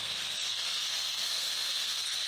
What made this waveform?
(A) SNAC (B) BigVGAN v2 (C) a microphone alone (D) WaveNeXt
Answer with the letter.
A